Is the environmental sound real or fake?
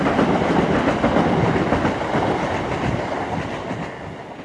real